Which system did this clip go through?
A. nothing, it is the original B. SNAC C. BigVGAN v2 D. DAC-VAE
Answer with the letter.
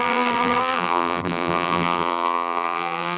C